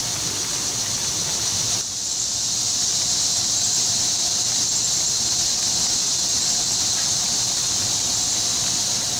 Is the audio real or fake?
real